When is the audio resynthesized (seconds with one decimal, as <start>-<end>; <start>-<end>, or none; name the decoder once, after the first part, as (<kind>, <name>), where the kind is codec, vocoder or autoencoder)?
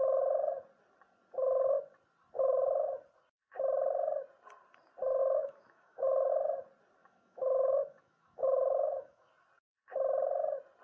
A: 5.2-6.3 (autoencoder, DAC-VAE); 7.0-9.3